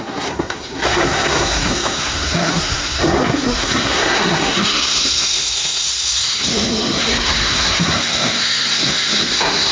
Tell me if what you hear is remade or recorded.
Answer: remade